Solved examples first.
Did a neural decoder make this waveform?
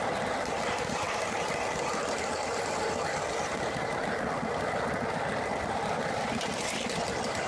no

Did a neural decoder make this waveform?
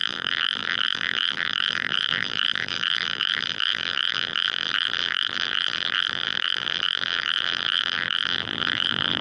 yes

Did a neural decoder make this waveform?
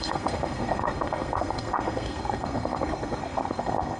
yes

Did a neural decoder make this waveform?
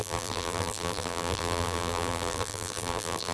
yes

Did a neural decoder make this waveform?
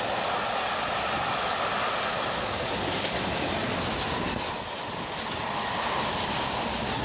no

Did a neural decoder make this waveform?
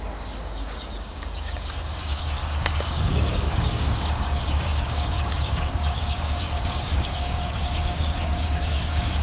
yes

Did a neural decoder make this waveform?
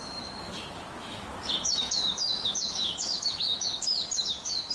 yes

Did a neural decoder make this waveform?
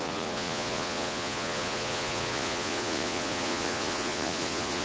yes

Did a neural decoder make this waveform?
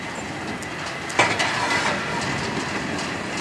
no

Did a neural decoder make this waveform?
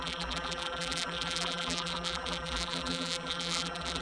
yes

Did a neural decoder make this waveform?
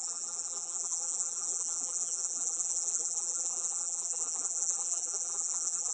yes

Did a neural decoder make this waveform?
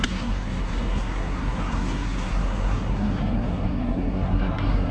yes